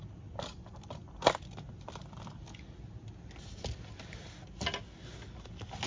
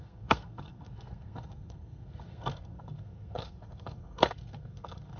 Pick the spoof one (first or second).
second